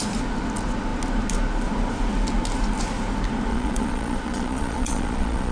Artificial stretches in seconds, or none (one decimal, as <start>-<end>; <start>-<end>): 3.5-5.5